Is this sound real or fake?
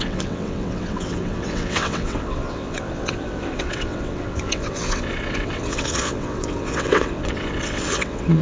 fake